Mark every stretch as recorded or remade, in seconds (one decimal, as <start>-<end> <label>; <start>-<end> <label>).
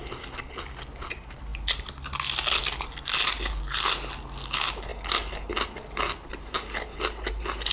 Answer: 0.0-7.7 recorded